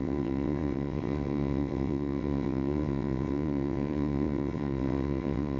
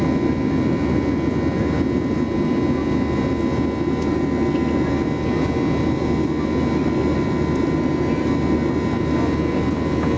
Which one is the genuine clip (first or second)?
second